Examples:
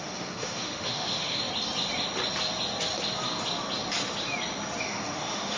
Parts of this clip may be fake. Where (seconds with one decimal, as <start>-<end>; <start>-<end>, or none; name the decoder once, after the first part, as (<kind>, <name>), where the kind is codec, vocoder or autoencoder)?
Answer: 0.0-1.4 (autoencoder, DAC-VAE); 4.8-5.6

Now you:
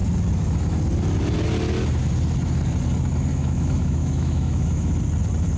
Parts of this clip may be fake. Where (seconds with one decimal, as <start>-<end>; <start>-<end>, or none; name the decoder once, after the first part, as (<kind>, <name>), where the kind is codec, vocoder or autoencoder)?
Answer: 3.3-4.9 (autoencoder, DAC-VAE)

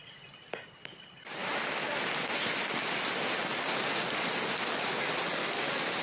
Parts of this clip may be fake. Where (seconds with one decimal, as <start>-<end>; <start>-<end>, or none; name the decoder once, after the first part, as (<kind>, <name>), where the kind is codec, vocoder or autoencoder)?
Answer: none

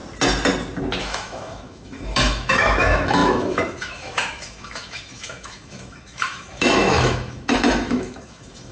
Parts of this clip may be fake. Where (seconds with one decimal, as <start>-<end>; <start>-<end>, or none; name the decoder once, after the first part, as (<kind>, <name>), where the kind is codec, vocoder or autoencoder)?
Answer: 1.0-8.7 (autoencoder, DAC-VAE)

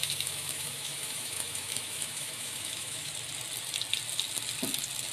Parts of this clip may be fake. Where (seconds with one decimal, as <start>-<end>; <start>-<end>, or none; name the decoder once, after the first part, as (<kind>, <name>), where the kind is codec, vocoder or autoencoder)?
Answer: 0.0-3.1 (autoencoder, DAC-VAE)